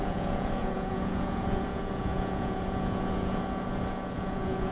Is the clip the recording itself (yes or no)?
no